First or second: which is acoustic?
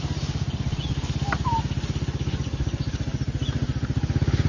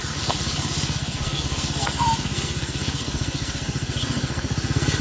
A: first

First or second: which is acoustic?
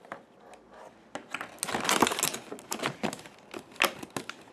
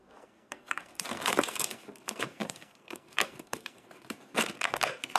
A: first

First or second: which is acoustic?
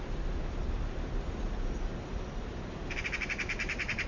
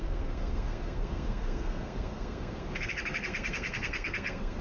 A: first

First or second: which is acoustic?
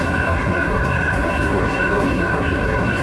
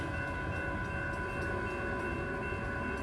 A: second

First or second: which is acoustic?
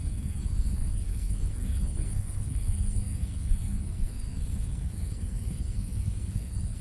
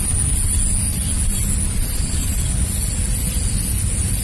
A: second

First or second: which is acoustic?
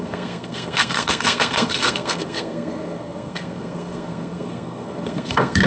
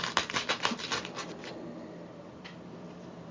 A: second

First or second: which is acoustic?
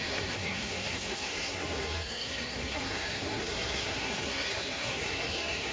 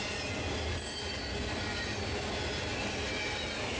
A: second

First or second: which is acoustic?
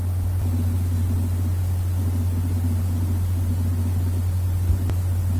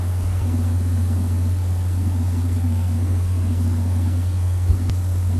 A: first